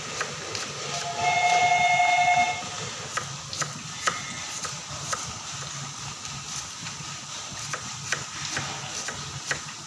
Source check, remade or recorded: recorded